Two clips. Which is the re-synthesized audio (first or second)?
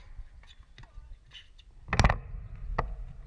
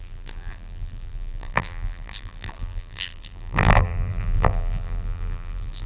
second